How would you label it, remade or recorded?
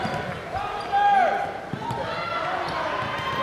recorded